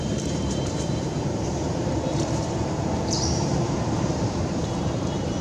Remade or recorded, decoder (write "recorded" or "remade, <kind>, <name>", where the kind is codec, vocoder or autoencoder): remade, vocoder, BigVGAN v2